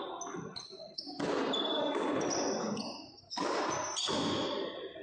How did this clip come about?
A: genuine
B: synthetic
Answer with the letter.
A